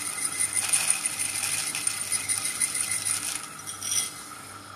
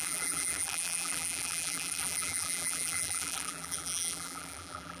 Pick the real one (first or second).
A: first